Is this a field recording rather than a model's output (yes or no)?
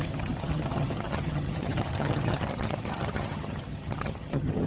no